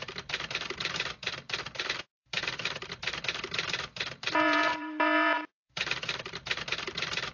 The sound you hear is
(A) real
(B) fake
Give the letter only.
B